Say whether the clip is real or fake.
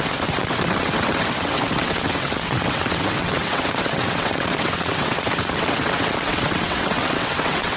fake